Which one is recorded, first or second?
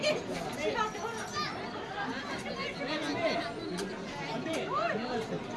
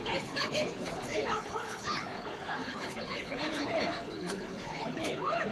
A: first